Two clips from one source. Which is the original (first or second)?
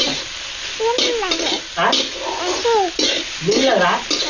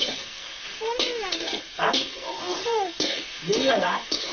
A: first